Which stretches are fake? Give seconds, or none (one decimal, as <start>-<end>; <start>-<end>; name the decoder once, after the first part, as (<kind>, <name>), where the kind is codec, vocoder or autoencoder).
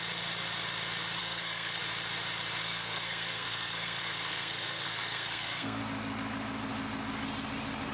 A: 1.2-1.8 (codec, SNAC); 2.6-5.8